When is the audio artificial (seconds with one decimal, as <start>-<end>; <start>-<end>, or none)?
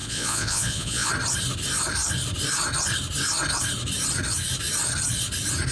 0.0-1.1